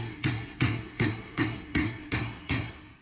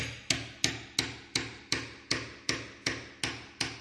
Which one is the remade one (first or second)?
first